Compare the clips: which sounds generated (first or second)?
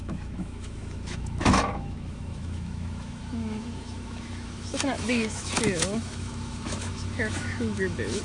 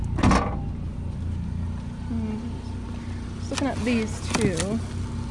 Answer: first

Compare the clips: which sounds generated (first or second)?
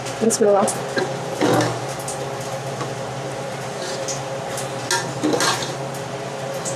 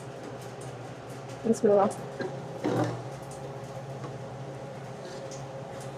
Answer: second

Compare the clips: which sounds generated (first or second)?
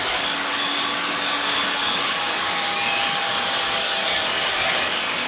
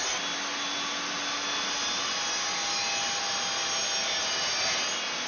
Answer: first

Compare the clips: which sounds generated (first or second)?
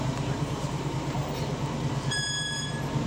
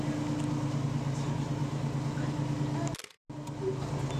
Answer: first